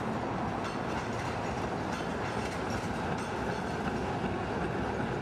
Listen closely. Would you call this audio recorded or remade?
recorded